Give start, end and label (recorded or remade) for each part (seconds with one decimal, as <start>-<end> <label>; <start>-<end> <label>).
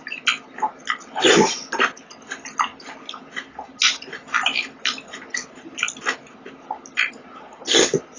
0.0-8.2 recorded